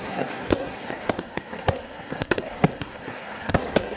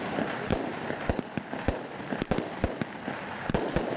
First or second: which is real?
second